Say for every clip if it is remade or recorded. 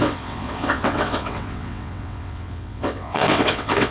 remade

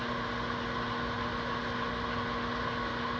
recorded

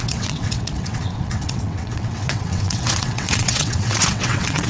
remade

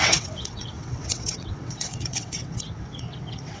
remade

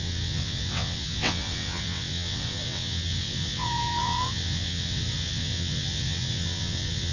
remade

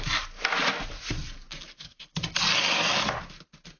recorded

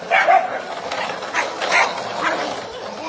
recorded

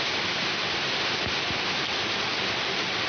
recorded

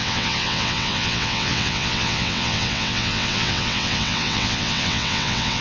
remade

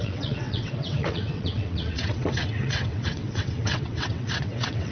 remade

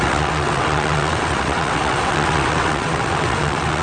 remade